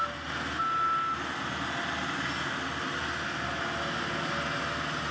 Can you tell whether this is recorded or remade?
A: recorded